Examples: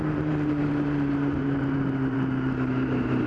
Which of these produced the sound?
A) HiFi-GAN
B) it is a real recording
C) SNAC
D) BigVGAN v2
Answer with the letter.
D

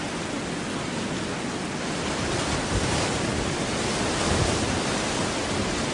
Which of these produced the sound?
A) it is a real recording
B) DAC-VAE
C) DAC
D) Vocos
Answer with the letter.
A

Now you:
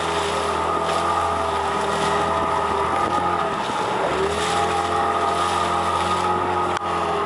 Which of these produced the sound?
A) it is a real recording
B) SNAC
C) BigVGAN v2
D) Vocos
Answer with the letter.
A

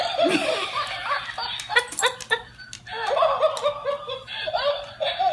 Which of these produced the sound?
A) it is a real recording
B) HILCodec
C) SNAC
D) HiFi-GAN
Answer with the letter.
A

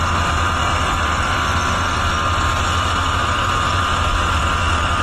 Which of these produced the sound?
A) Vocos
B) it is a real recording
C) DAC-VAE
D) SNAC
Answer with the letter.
B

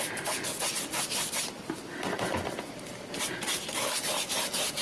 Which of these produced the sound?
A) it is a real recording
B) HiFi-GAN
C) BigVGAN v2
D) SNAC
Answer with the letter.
A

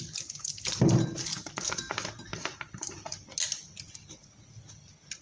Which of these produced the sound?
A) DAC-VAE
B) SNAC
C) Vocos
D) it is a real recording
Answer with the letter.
D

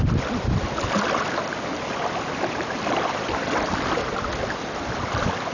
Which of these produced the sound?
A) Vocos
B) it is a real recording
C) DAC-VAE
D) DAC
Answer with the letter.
B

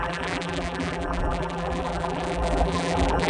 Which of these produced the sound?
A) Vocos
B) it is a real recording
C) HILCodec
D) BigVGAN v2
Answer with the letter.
D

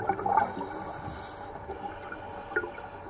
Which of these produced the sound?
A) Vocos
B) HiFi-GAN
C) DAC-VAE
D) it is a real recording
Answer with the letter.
D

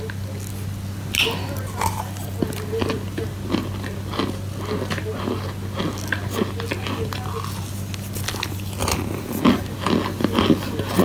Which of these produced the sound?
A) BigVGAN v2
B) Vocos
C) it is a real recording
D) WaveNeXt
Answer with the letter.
C